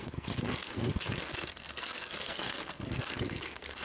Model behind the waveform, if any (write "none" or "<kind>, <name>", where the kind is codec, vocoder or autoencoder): codec, SNAC